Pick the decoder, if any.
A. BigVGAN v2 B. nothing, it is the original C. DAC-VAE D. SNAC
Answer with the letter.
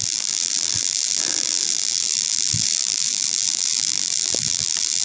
A